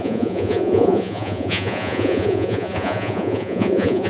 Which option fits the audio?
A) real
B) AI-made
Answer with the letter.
B